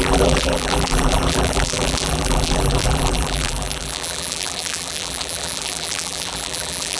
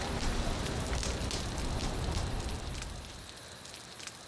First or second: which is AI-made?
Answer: first